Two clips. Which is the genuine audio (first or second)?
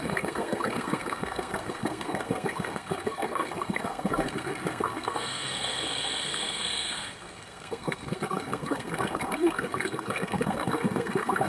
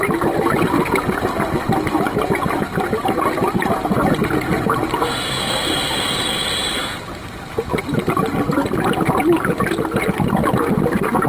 second